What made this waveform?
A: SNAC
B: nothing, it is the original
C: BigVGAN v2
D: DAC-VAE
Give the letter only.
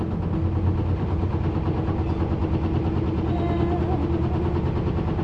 B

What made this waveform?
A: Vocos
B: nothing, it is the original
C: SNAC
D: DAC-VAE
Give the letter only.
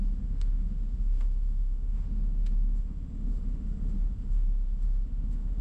D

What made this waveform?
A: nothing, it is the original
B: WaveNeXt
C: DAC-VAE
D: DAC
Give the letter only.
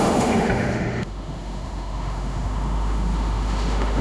C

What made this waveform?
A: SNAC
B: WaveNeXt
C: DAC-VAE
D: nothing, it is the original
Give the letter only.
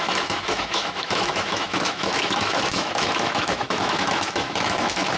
C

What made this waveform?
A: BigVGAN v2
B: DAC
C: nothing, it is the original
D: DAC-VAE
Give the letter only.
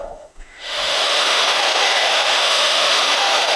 D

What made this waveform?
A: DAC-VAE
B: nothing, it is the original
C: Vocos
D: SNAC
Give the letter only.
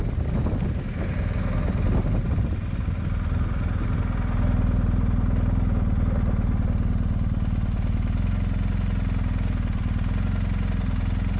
B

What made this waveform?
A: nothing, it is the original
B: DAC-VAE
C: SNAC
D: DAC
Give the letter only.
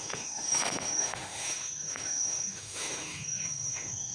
B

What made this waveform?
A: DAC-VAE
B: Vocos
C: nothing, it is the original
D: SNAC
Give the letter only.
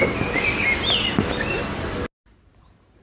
C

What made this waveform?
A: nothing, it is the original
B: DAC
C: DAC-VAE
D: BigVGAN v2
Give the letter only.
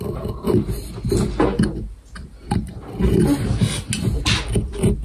A